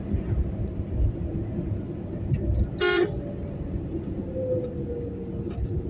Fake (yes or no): no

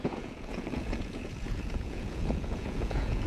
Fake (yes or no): yes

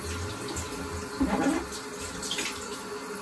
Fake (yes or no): no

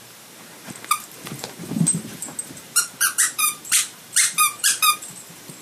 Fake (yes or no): yes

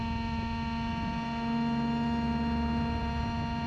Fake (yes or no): no